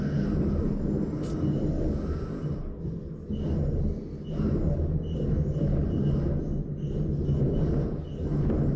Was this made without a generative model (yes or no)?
yes